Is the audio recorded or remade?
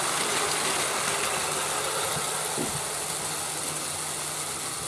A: recorded